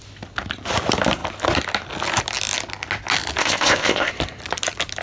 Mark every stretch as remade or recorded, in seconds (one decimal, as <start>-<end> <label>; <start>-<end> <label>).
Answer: 0.0-3.4 recorded; 3.4-4.1 remade; 4.1-5.0 recorded